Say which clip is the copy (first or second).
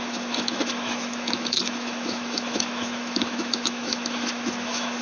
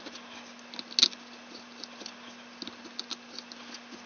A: first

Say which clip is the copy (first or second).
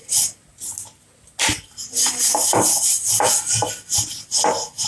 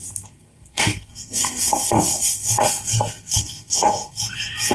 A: second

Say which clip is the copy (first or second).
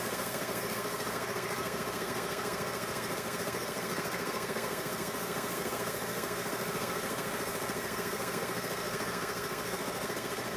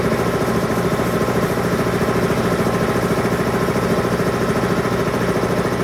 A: first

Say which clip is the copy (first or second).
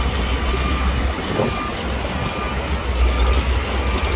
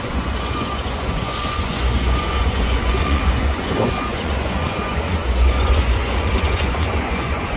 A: second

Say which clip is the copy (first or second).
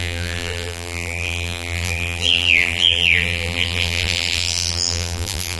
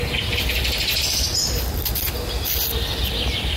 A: first